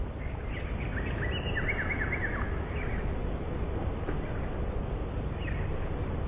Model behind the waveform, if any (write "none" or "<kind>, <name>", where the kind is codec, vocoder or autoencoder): none